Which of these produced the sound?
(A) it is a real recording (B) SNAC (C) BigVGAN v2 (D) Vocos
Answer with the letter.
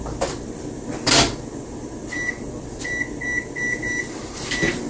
A